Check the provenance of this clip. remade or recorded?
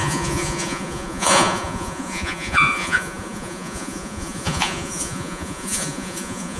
remade